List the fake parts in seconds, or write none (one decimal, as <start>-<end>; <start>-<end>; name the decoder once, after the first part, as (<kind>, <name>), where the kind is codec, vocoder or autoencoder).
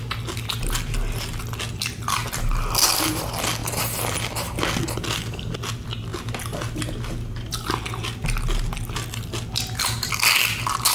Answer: none